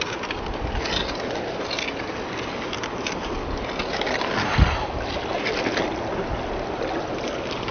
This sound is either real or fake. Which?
real